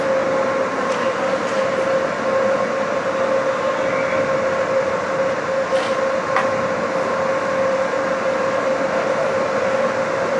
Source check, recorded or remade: recorded